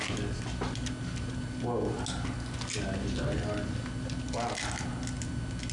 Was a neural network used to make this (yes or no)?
no